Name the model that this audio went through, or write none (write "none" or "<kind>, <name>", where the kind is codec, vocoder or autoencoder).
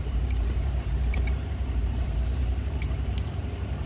vocoder, BigVGAN v2